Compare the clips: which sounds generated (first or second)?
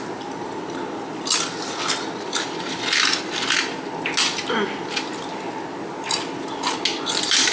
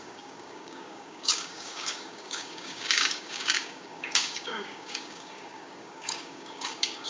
second